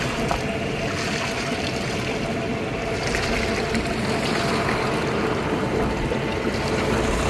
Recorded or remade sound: recorded